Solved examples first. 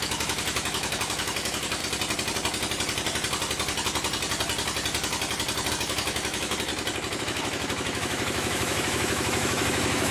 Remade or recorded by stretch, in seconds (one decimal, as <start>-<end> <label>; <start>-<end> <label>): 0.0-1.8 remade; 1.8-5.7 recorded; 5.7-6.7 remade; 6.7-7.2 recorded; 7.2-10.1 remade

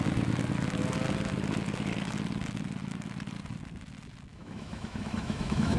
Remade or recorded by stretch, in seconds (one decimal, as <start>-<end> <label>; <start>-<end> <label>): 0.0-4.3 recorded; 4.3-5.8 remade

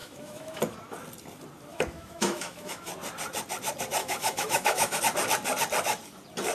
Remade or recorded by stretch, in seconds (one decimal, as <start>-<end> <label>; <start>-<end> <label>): 0.0-0.6 remade; 0.6-1.7 recorded; 1.7-2.9 remade; 2.9-4.0 recorded; 4.0-5.0 remade; 5.0-6.5 recorded